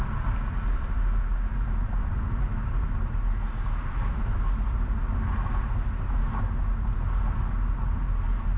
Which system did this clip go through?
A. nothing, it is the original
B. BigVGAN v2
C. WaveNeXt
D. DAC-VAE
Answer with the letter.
A